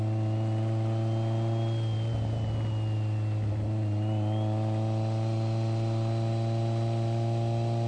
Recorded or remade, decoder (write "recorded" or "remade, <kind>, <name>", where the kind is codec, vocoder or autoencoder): recorded